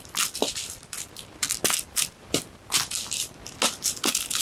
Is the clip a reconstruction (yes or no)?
no